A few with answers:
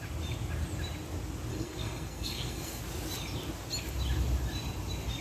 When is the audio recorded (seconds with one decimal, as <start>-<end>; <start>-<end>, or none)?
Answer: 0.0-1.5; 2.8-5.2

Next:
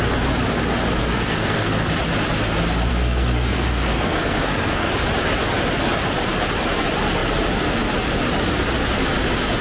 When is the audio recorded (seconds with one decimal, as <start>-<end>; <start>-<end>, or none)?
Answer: 0.0-1.0; 1.9-2.9; 4.9-9.6

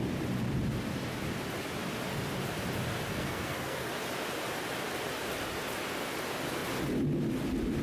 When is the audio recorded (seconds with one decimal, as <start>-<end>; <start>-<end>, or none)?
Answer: 0.0-3.1; 3.9-7.8

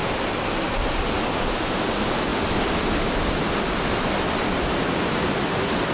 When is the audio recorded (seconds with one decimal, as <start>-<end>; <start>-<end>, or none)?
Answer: 0.0-5.9